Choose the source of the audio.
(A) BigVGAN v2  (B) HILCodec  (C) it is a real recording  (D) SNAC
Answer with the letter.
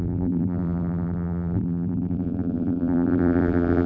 A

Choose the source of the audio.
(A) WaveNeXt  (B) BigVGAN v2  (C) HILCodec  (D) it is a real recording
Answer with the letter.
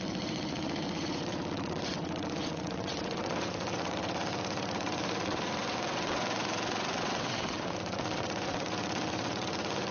A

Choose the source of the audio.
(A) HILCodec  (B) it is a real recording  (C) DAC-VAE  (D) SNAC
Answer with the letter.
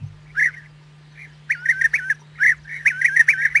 B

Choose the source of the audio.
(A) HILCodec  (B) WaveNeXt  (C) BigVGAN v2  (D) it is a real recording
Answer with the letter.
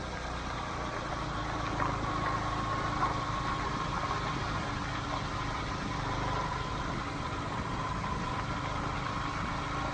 D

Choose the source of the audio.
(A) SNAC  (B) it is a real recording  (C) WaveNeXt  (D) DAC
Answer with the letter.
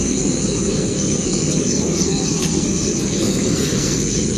A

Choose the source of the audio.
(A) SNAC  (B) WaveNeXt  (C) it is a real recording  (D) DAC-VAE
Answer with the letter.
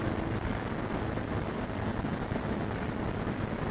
C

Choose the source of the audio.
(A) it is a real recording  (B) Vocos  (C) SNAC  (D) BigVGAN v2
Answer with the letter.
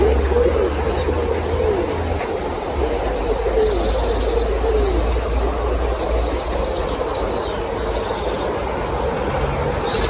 A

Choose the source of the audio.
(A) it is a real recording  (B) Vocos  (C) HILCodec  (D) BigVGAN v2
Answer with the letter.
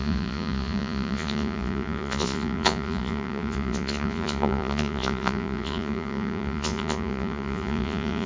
B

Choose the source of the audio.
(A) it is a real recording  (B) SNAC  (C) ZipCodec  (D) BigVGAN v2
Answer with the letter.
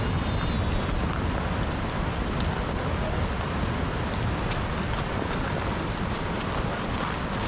A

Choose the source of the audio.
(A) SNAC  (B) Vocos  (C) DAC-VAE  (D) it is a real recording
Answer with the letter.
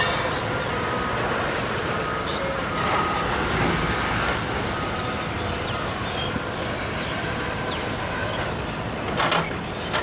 D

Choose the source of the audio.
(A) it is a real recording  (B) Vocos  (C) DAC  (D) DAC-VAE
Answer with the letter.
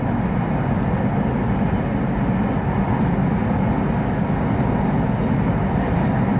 A